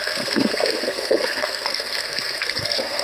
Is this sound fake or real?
fake